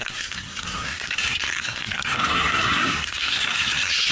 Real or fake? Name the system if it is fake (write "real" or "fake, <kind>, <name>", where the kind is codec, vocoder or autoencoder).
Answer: fake, codec, SNAC